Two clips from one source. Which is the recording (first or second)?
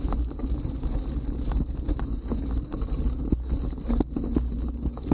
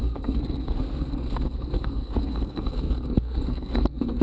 first